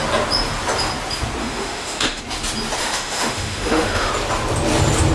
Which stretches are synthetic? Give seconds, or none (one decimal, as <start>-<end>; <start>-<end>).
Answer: 1.4-2.2; 2.8-4.1